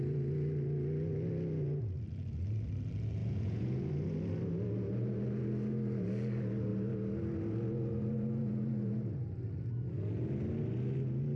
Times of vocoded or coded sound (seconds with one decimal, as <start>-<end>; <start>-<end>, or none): 3.2-3.9